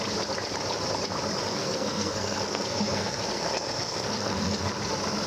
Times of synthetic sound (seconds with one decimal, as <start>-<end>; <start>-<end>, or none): 1.5-4.7